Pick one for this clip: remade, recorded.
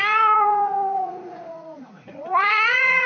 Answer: remade